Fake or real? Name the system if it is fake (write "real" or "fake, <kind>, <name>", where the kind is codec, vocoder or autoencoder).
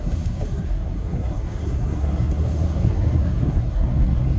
fake, codec, SNAC